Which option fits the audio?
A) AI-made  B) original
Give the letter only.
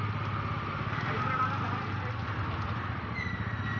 B